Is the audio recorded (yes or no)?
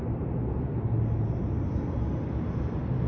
yes